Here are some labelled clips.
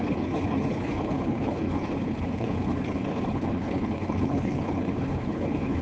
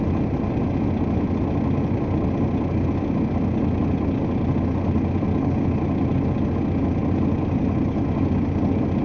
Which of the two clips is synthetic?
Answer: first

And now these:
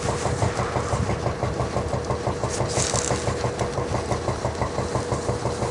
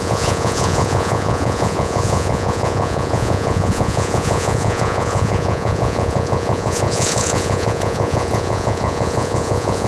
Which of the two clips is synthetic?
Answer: second